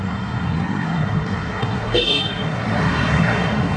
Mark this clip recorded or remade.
remade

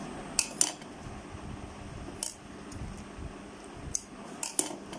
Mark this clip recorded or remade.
recorded